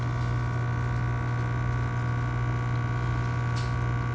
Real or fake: real